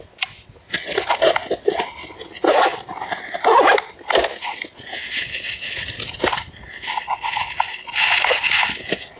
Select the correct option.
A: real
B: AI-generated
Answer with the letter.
A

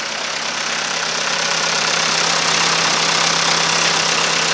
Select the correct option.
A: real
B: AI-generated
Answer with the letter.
A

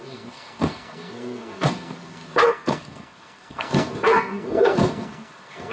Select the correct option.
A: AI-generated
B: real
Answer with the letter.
A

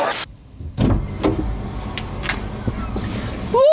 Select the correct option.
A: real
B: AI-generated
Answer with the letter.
A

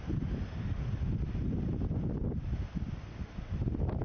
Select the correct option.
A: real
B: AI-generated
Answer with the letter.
A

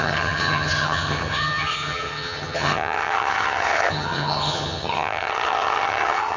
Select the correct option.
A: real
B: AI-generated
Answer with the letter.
B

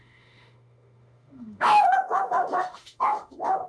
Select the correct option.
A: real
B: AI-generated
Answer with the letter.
B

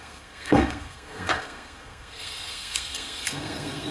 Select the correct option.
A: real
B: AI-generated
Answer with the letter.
B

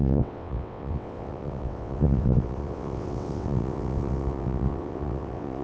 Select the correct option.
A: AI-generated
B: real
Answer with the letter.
A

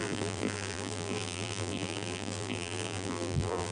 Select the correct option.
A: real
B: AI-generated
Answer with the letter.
B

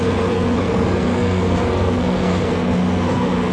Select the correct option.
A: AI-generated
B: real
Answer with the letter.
A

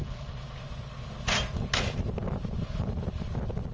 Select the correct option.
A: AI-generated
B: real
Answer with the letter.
B